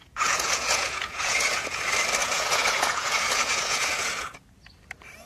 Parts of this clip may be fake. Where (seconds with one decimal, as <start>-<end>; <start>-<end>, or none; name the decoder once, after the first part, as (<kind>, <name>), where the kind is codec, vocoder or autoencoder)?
0.0-1.8 (vocoder, Vocos); 2.2-4.4